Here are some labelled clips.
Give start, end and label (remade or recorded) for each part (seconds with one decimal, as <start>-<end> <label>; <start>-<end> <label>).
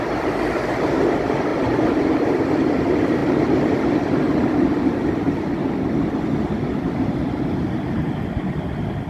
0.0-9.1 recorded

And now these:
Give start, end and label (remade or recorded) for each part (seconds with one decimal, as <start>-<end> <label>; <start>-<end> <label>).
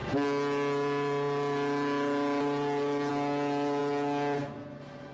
0.0-5.1 recorded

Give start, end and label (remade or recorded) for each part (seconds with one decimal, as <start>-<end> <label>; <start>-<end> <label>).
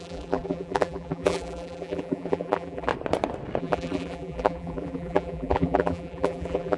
0.0-2.9 remade; 2.9-3.6 recorded; 3.6-6.8 remade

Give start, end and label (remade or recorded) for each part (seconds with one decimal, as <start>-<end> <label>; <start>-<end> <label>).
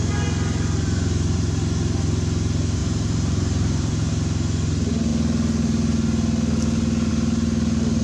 0.0-2.8 recorded; 2.8-4.1 remade; 4.1-8.0 recorded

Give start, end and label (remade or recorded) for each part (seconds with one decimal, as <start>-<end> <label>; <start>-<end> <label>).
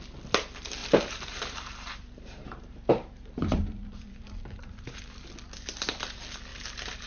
0.0-0.8 recorded; 0.8-5.1 remade; 5.1-6.5 recorded; 6.5-7.1 remade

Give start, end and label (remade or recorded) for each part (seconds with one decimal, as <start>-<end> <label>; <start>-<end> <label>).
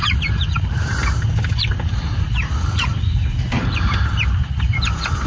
0.0-1.0 remade; 1.0-1.7 recorded; 1.7-5.3 remade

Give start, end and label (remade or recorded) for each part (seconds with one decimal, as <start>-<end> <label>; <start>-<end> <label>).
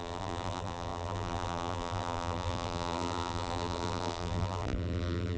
0.0-5.4 remade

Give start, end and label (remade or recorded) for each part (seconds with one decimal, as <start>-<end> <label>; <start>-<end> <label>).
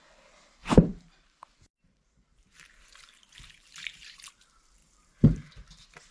0.0-0.6 recorded; 0.6-4.3 remade; 4.3-4.8 recorded; 4.8-5.5 remade; 5.5-6.1 recorded